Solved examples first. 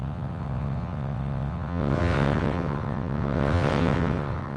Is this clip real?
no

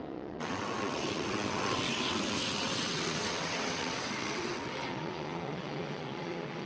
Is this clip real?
no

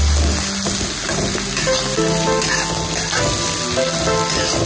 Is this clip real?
yes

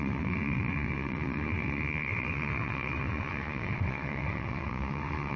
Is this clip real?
no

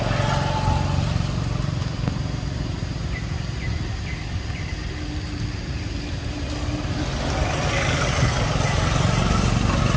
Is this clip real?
yes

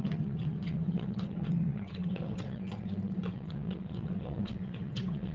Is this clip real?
no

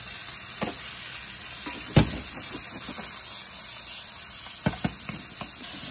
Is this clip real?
yes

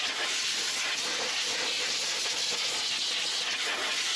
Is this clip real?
yes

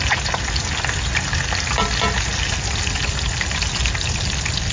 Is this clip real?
yes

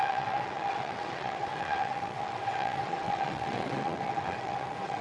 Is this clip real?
no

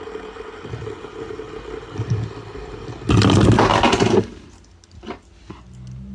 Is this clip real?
yes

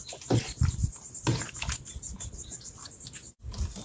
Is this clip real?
yes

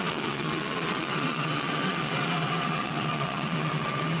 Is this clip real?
no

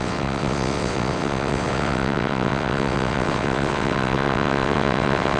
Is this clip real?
no